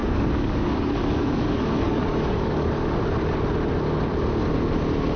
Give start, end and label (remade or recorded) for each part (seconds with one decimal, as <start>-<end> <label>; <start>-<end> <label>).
0.0-3.0 remade; 3.0-5.2 recorded